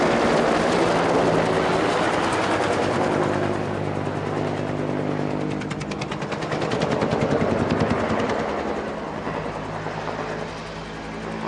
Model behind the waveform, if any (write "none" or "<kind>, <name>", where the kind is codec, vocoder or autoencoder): none